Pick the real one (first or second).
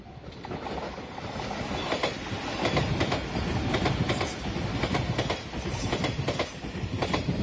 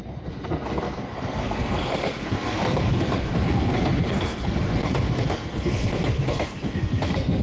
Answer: first